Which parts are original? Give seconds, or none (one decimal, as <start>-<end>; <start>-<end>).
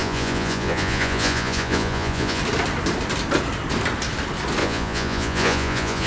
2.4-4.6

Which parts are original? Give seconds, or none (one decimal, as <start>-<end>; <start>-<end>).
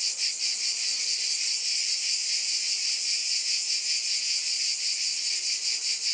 0.0-3.2; 4.6-6.1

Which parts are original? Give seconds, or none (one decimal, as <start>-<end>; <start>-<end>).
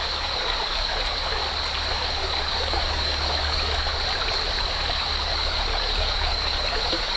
1.4-1.9; 3.9-4.6